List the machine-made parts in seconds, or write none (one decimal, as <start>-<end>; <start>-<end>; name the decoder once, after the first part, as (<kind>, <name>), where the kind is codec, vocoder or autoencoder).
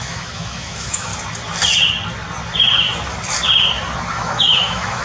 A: 0.0-1.1 (autoencoder, DAC-VAE); 4.1-5.0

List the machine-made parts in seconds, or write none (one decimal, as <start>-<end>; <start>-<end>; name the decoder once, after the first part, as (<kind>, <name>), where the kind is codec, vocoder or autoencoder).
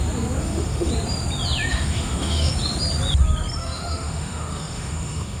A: 0.4-0.9 (autoencoder, DAC-VAE); 1.7-2.5; 3.6-5.4